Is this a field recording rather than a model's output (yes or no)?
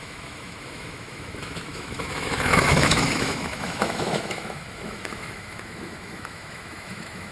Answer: no